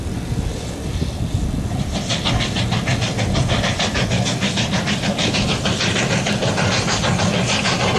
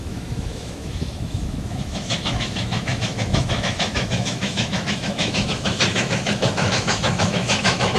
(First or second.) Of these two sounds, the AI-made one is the second